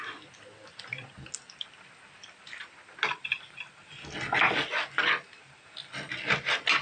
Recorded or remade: recorded